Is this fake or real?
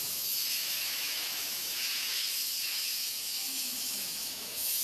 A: fake